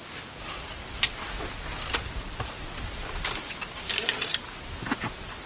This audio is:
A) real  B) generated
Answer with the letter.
A